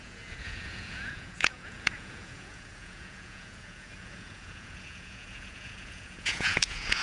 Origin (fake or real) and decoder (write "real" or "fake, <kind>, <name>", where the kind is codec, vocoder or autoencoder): fake, vocoder, Vocos